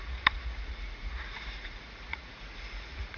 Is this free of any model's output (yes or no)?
no